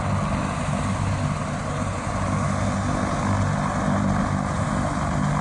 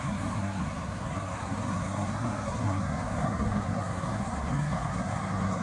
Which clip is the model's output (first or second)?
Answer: second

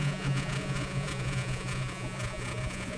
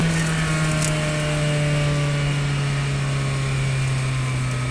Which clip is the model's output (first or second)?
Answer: first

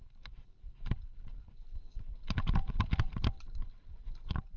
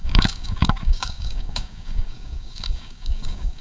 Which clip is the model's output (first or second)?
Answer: second